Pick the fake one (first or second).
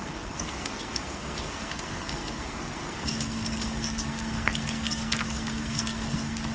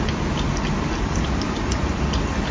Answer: first